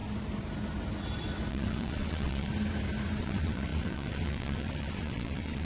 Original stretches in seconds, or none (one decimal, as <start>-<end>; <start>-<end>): 0.0-1.5; 2.5-3.2

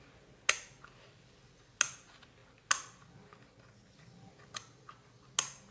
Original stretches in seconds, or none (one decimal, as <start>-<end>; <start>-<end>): 0.0-5.7

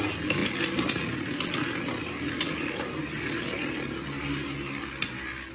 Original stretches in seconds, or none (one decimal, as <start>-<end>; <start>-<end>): 0.0-2.0; 3.0-5.5

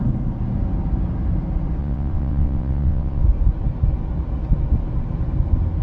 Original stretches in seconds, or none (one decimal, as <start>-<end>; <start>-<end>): 0.0-1.8; 3.2-5.8

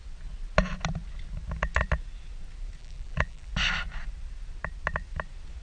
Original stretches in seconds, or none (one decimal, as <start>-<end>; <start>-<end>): 0.0-2.8; 3.5-5.6

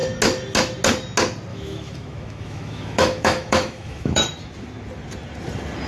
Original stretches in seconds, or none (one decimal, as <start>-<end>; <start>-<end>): 0.0-1.5; 4.2-5.9

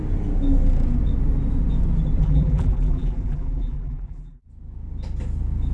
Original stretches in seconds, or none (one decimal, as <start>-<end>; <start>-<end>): 0.0-2.2; 4.4-5.7